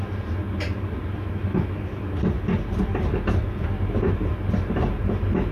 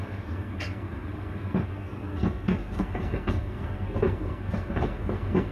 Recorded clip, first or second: first